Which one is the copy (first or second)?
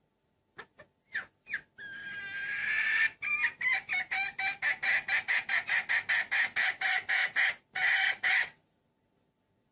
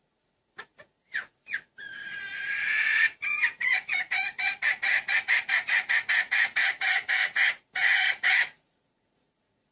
second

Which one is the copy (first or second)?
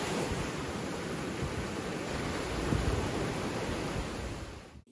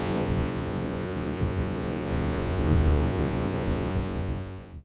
second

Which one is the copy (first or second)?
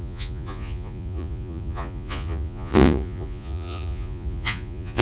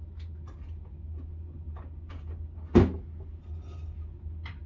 first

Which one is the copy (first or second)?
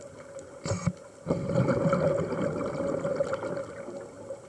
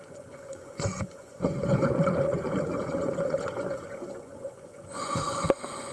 second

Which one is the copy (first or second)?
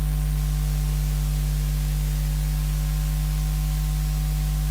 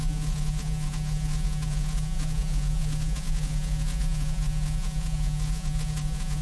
second